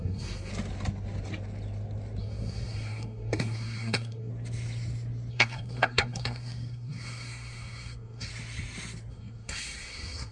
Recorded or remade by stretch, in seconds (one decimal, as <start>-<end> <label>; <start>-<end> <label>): 0.0-0.5 remade; 0.5-2.2 recorded; 2.2-4.3 remade; 4.3-5.3 recorded; 5.3-8.3 remade; 8.3-9.1 recorded; 9.1-10.3 remade